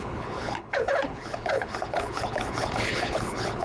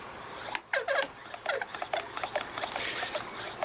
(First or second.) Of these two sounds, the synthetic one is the first